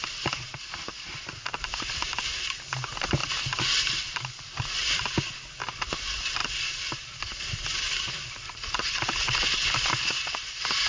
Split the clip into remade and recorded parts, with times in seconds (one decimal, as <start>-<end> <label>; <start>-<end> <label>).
0.0-10.9 recorded